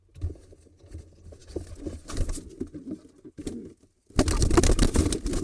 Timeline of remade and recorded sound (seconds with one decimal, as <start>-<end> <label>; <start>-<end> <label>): 0.0-5.4 recorded